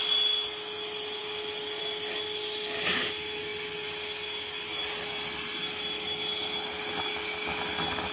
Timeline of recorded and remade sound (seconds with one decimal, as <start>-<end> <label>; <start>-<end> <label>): 0.0-8.1 recorded